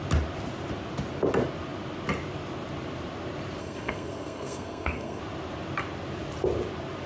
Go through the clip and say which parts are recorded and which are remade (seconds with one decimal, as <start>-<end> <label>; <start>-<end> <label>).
0.0-3.6 recorded; 3.6-5.2 remade; 5.2-7.1 recorded